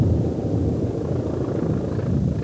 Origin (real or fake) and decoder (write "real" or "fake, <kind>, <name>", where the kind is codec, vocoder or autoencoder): real